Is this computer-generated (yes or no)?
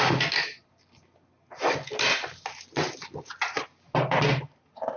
no